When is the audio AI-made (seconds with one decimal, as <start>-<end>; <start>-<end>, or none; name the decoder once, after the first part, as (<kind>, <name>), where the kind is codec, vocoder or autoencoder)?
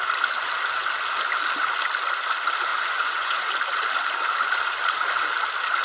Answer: 2.7-3.4 (vocoder, Vocos)